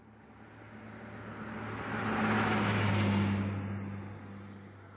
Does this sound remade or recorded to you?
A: recorded